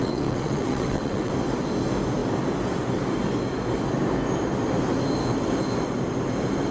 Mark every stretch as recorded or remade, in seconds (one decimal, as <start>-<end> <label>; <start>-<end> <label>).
0.0-1.3 remade; 1.3-6.7 recorded